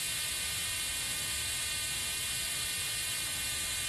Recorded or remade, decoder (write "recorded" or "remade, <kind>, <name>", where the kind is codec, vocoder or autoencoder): remade, vocoder, BigVGAN v2